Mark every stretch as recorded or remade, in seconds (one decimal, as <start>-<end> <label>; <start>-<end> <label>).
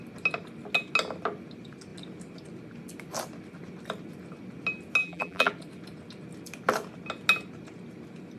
0.0-5.0 recorded; 5.0-5.5 remade; 5.5-8.4 recorded